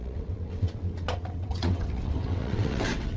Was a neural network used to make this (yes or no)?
yes